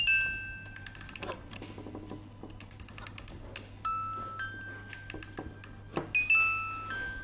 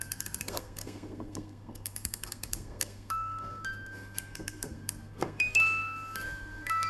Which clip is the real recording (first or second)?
first